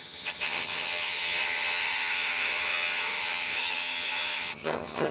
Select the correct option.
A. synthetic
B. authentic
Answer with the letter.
A